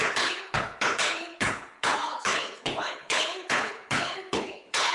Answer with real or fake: fake